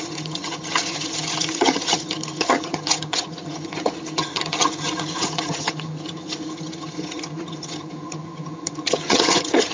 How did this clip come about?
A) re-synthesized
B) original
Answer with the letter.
A